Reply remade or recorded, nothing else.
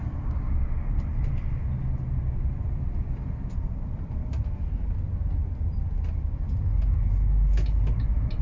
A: recorded